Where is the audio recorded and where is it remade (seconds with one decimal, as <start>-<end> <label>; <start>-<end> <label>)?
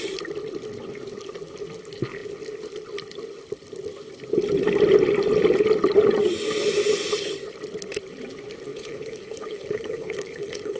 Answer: 0.0-8.7 recorded; 8.7-10.8 remade